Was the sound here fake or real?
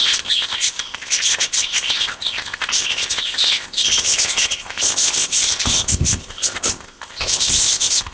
fake